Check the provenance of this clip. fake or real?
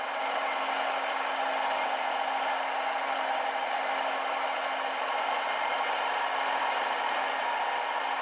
real